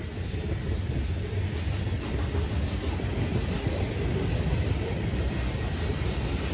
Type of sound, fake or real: real